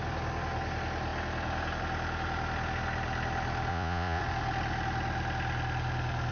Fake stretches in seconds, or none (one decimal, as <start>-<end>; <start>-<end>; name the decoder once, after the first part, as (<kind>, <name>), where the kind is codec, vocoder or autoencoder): 3.7-4.2 (vocoder, Vocos)